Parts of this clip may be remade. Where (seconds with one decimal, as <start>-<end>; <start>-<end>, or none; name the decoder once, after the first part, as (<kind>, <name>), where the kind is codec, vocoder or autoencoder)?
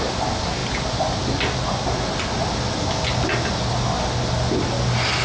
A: none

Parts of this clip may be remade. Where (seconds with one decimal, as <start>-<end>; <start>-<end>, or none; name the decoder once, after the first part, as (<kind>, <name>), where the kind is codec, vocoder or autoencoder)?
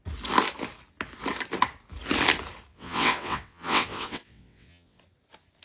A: 2.7-5.0 (vocoder, WaveNeXt)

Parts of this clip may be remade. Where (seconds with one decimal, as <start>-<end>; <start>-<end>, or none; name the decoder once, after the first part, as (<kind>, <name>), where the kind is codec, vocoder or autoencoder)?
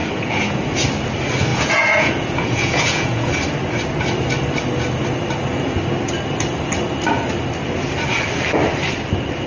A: 0.0-0.6 (vocoder, Vocos); 1.5-3.3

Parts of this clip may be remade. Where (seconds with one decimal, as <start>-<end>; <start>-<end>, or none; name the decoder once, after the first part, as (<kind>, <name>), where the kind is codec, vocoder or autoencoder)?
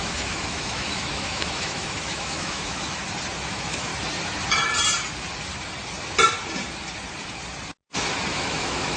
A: 0.0-3.0 (autoencoder, DAC-VAE); 3.5-3.9; 8.3-9.0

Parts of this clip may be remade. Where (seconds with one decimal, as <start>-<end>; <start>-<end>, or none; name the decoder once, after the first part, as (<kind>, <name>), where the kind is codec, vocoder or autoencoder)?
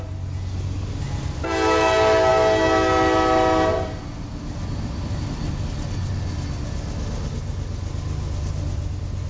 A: none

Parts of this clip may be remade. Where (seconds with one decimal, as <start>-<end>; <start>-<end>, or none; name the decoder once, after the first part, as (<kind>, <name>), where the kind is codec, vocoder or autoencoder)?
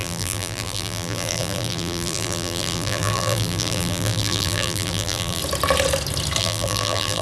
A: 0.0-5.4 (vocoder, BigVGAN v2); 6.4-7.2